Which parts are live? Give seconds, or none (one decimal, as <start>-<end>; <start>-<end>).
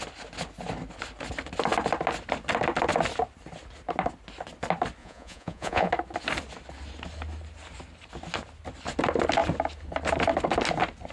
0.0-5.0; 5.9-11.1